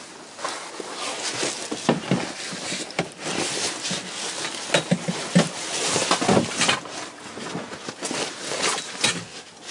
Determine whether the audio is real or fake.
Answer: real